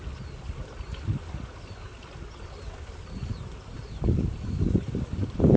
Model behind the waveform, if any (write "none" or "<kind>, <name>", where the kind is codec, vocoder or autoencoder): none